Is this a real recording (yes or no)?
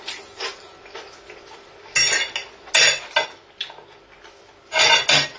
yes